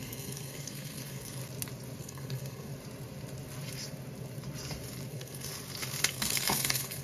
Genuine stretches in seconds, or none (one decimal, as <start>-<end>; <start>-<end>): 1.4-2.0; 2.7-5.1; 5.5-6.1